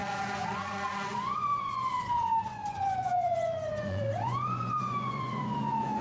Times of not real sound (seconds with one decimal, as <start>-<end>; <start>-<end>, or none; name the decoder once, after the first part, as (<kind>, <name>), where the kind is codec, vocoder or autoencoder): 0.0-6.0 (vocoder, Vocos)